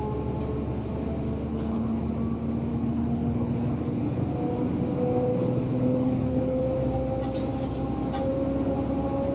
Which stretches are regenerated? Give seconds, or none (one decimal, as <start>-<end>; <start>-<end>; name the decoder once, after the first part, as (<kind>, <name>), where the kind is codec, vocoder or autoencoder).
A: 1.5-2.1 (codec, HILCodec); 2.7-4.2; 5.3-6.6